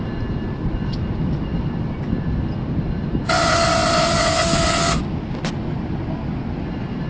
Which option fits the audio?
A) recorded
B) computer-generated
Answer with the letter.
A